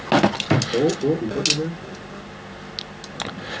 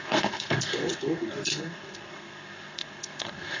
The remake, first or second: second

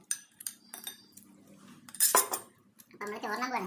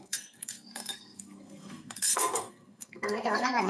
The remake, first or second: second